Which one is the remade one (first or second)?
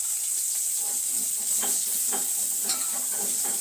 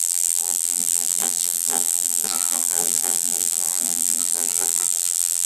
second